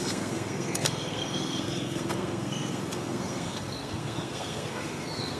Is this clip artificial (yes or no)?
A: yes